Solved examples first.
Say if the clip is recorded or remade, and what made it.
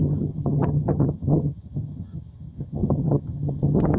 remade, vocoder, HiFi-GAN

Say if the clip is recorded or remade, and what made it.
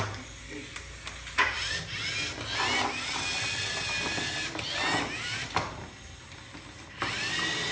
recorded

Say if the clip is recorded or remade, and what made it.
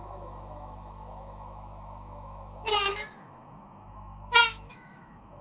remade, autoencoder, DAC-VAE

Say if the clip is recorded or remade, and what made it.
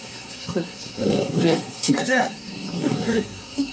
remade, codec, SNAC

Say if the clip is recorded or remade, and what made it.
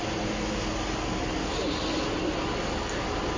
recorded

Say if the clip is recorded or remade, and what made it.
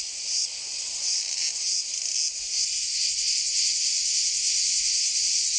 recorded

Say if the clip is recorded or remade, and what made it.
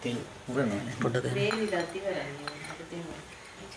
recorded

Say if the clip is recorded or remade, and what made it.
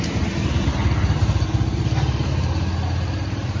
recorded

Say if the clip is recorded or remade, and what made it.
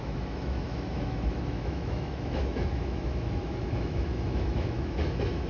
remade, autoencoder, DAC-VAE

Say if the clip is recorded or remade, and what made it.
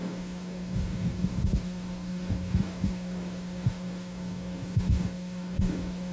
remade, codec, DAC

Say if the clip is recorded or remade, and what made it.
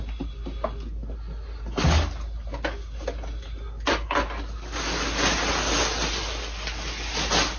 recorded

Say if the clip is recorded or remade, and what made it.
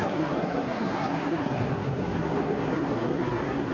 remade, codec, SNAC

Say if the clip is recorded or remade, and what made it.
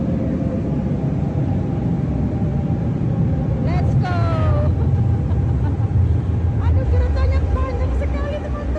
recorded